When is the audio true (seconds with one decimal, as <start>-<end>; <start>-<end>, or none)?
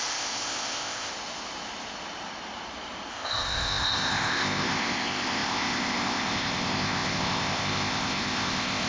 1.1-3.1